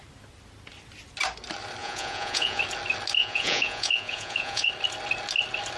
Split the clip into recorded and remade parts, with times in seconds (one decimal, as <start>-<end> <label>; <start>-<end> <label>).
0.0-1.8 recorded; 1.8-2.6 remade; 2.6-3.2 recorded; 3.2-4.7 remade; 4.7-5.8 recorded

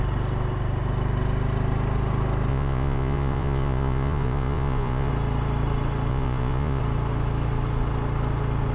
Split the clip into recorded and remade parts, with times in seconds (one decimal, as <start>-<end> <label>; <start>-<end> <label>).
0.0-2.5 recorded; 2.5-5.1 remade; 5.1-6.1 recorded; 6.1-6.8 remade; 6.8-8.7 recorded